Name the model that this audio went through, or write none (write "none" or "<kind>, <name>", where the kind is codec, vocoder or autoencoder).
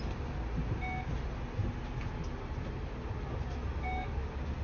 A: none